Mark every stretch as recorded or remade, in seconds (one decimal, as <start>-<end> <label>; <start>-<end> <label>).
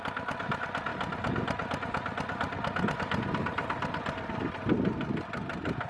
0.0-5.9 recorded